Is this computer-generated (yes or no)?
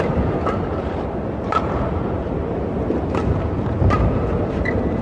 no